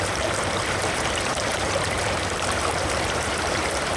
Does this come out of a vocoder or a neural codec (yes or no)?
yes